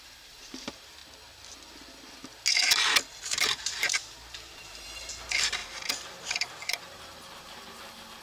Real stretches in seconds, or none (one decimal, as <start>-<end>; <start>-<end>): 1.0-3.2